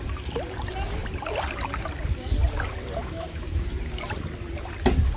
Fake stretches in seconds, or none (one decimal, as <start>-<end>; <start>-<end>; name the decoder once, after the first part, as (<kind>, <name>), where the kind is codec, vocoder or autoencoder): 3.0-3.7 (autoencoder, DAC-VAE)